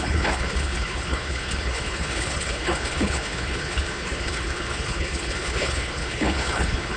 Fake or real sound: fake